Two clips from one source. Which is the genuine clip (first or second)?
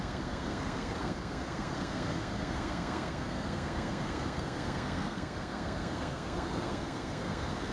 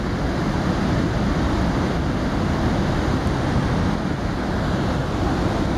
second